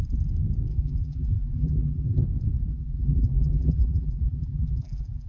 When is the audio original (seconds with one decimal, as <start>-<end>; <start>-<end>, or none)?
0.0-0.7; 2.2-2.7